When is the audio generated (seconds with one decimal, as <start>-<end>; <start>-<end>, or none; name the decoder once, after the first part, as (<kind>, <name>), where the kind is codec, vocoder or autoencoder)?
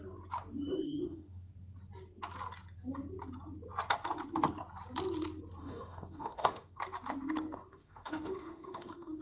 0.7-1.5 (autoencoder, DAC-VAE); 5.6-6.8; 7.7-9.2